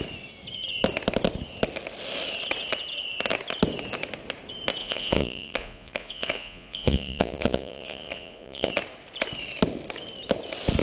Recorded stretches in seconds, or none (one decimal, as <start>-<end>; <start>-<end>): 0.0-4.8; 8.7-10.8